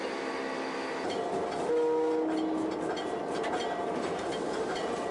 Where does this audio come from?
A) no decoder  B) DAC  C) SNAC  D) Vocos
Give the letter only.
A